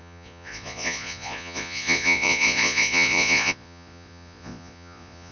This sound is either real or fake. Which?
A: fake